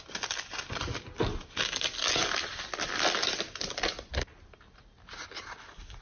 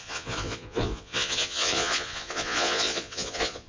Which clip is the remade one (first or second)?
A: second